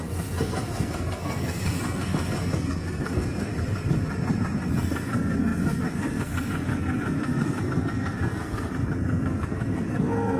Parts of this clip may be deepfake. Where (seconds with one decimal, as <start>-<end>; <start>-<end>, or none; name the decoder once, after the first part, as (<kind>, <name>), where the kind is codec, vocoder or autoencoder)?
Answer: 0.0-3.5 (codec, SNAC); 4.7-10.4

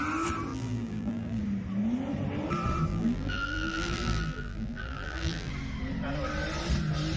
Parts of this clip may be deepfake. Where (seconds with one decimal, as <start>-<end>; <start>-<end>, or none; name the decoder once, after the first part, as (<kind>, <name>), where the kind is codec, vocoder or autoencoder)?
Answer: 0.5-1.4 (vocoder, BigVGAN v2); 2.9-5.5

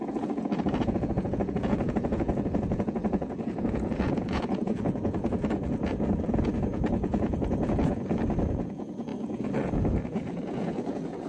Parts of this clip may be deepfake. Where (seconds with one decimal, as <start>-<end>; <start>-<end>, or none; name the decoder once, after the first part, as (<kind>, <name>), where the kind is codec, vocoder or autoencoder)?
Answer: 0.0-11.3 (vocoder, Vocos)

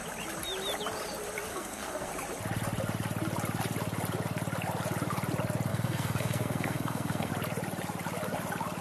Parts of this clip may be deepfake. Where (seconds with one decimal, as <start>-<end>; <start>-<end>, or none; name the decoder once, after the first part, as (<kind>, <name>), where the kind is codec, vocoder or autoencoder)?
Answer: 1.5-2.1 (codec, SNAC); 5.7-7.3

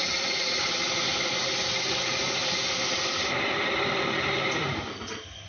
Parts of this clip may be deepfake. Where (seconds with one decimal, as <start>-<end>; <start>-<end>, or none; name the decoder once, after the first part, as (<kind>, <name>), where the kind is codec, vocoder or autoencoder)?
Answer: none

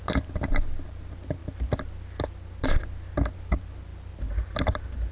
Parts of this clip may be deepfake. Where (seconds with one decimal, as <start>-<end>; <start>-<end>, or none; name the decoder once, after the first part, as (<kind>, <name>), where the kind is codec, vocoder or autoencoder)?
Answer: none

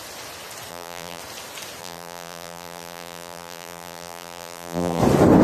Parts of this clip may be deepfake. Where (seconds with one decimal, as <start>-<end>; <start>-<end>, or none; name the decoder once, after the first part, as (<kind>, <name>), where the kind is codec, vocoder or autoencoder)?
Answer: 0.7-1.2 (vocoder, BigVGAN v2); 1.8-5.0

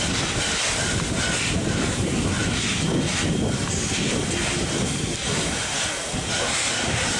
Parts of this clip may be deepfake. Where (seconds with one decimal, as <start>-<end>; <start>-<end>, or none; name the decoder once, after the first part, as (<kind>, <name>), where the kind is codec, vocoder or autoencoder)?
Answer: none